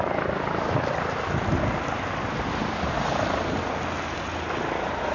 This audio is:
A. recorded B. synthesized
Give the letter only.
A